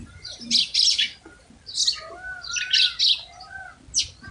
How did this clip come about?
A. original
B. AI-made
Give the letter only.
A